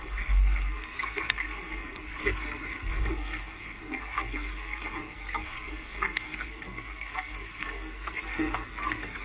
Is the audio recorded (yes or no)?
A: no